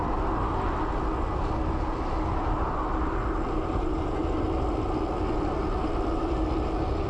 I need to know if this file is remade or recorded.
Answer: recorded